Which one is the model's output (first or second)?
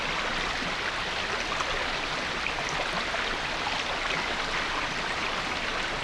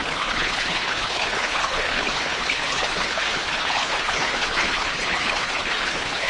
second